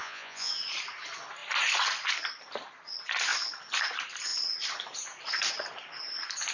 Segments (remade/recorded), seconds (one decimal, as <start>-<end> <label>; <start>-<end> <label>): 0.0-0.5 remade; 0.5-6.5 recorded